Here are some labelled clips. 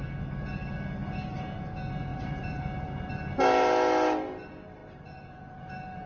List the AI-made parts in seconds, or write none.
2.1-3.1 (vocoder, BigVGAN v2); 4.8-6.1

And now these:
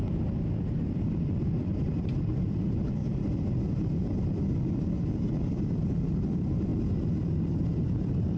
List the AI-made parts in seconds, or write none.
0.0-3.0 (vocoder, BigVGAN v2); 4.4-6.7; 7.2-8.4

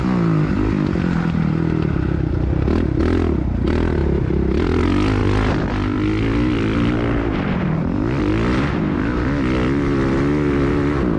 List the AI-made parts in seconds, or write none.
4.0-4.8 (vocoder, BigVGAN v2); 5.2-8.3

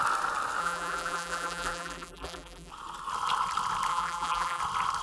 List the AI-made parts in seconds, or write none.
0.6-2.7 (vocoder, BigVGAN v2); 3.9-4.6

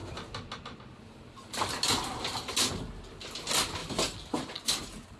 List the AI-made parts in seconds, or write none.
3.8-4.5 (vocoder, BigVGAN v2)